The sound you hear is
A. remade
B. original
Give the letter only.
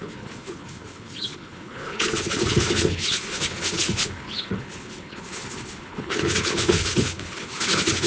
A